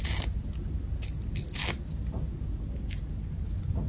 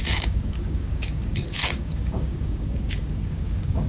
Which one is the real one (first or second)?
first